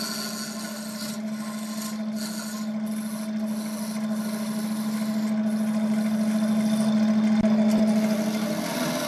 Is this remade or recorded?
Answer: recorded